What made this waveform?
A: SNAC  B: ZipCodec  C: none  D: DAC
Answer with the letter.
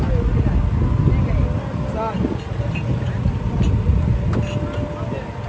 C